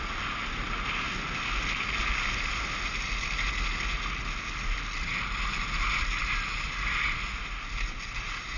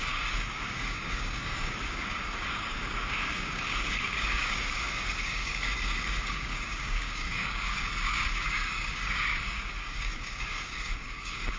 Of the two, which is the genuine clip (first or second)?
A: first